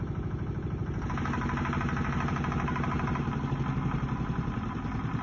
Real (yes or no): yes